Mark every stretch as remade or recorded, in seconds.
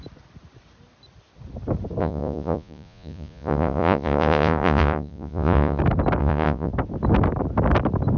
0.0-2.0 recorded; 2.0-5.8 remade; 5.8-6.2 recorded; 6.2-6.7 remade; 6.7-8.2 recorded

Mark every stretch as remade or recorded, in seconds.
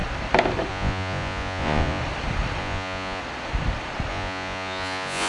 0.0-0.7 recorded; 0.7-2.0 remade; 2.0-2.6 recorded; 2.6-3.2 remade; 3.2-4.1 recorded; 4.1-5.3 remade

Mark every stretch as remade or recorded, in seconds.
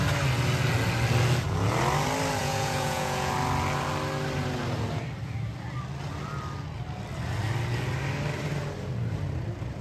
0.0-2.4 recorded; 2.4-3.3 remade; 3.3-9.8 recorded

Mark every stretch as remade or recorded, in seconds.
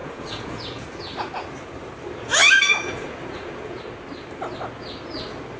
0.0-1.3 remade; 1.3-2.4 recorded; 2.4-3.8 remade; 3.8-5.6 recorded